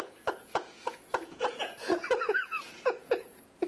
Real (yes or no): no